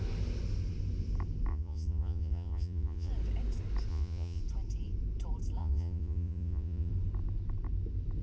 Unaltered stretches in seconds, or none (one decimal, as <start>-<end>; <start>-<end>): 0.0-1.5; 3.1-3.9; 4.4-5.6; 6.9-8.2